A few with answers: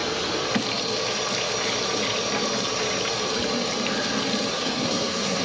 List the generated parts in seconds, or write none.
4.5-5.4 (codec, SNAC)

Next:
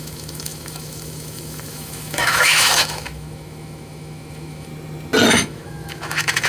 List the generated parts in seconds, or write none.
0.0-4.7 (autoencoder, DAC-VAE); 5.3-6.5

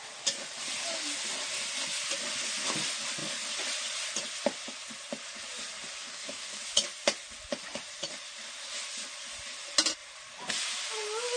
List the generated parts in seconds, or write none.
6.0-6.6 (codec, DAC)

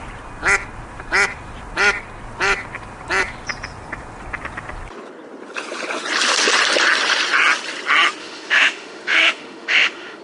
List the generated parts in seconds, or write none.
8.2-10.2 (autoencoder, DAC-VAE)

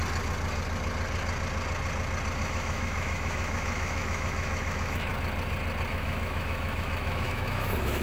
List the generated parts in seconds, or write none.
2.4-5.1 (autoencoder, DAC-VAE); 5.9-8.0